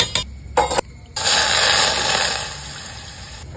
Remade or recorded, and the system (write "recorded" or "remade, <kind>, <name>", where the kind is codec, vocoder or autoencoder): recorded